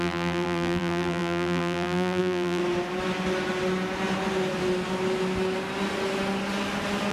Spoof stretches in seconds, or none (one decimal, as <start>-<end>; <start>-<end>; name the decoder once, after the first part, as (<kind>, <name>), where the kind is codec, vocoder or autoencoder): 0.0-2.6 (vocoder, BigVGAN v2)